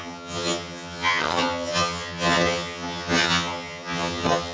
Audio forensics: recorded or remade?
remade